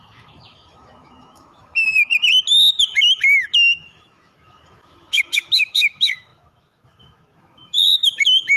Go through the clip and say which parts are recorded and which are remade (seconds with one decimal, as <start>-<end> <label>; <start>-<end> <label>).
0.0-2.1 remade; 2.1-2.9 recorded; 2.9-8.6 remade